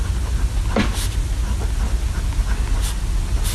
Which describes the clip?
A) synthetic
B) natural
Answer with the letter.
B